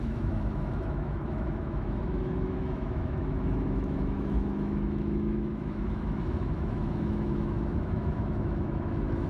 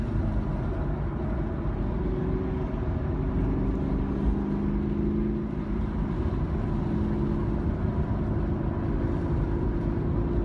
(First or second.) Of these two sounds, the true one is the second